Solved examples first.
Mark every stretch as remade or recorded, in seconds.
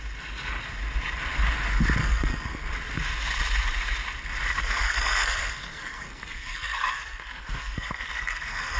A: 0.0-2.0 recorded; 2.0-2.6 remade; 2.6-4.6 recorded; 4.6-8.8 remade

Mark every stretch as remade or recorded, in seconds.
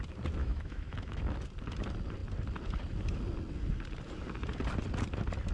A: 0.0-0.4 recorded; 0.4-1.2 remade; 1.2-5.5 recorded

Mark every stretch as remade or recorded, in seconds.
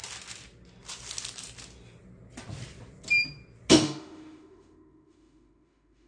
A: 0.0-3.7 recorded; 3.7-6.1 remade